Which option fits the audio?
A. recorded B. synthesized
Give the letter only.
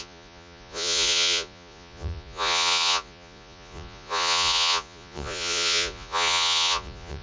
B